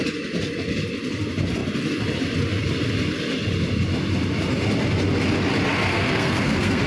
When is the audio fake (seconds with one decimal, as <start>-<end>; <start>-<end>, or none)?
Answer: 5.9-6.9